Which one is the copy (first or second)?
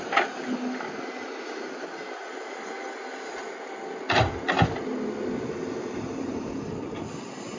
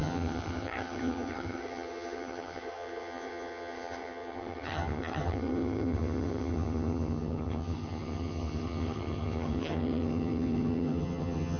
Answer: second